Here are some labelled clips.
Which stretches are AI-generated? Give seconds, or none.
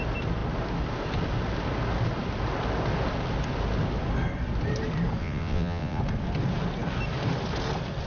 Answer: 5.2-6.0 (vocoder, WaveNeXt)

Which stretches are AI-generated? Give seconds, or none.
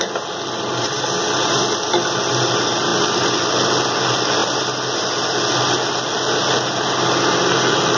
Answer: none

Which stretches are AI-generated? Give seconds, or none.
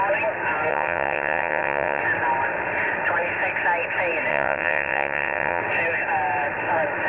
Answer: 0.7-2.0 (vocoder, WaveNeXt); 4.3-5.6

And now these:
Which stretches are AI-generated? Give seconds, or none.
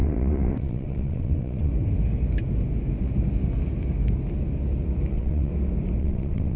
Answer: 0.0-1.7 (vocoder, WaveNeXt); 5.1-5.5; 6.0-6.6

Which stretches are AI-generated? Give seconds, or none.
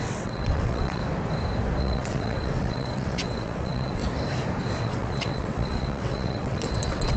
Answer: 0.0-1.0 (vocoder, WaveNeXt); 1.8-4.0; 4.8-7.2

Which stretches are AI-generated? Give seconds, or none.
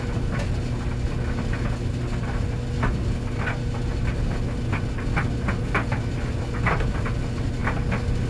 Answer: none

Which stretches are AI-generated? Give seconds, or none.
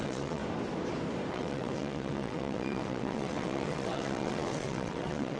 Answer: 0.0-0.4 (vocoder, WaveNeXt); 1.3-5.4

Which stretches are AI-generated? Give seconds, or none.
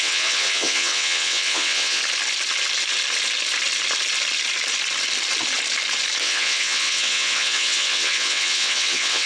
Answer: 0.0-2.0 (vocoder, WaveNeXt); 6.2-9.3